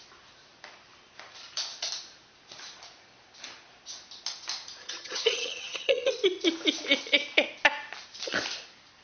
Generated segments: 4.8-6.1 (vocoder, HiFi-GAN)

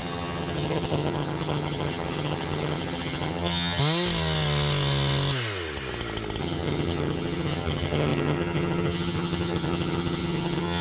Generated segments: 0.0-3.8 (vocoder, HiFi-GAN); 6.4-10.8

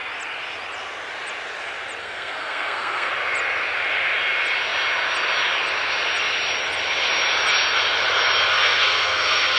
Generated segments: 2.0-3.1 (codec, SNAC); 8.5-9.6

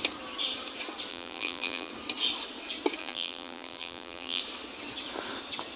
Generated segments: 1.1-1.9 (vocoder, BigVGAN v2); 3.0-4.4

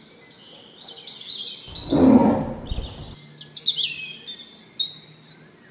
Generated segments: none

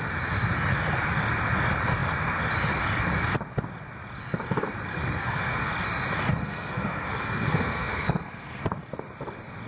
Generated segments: 4.9-5.7 (codec, SNAC); 6.4-8.6

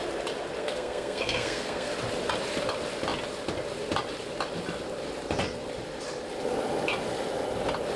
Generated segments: 0.6-1.9 (codec, SNAC)